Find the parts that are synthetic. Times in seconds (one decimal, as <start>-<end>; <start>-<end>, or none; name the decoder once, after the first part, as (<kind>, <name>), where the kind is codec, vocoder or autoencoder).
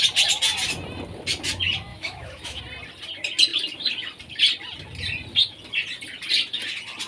1.9-2.6 (autoencoder, DAC-VAE)